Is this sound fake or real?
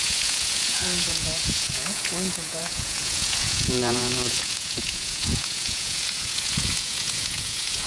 fake